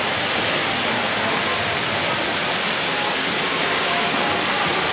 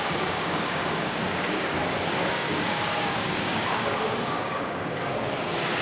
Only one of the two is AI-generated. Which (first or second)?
second